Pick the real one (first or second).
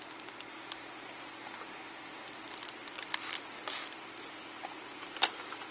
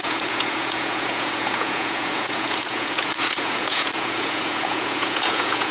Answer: first